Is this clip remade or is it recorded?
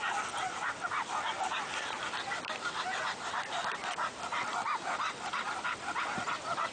recorded